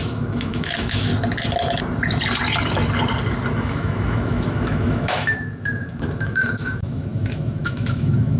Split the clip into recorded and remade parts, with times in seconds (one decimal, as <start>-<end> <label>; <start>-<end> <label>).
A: 0.0-1.1 remade; 1.1-3.6 recorded; 3.6-8.4 remade

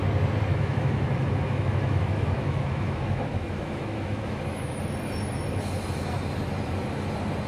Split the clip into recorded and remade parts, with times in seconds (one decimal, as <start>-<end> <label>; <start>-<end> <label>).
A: 0.0-0.5 recorded; 0.5-4.8 remade; 4.8-7.5 recorded

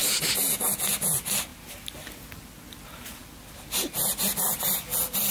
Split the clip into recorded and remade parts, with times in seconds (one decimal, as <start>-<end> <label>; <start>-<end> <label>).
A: 0.0-5.3 recorded

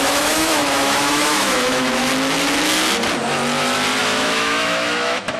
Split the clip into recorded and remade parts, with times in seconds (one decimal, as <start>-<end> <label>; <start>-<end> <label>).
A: 0.0-2.1 remade; 2.1-4.0 recorded; 4.0-5.4 remade